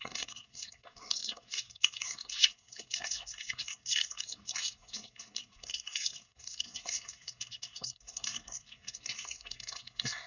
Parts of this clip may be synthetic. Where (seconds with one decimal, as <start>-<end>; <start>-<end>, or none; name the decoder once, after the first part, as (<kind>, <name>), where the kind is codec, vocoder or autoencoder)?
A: 0.0-10.3 (codec, SNAC)